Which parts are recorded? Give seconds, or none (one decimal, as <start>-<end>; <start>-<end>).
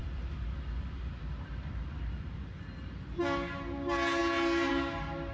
3.2-5.3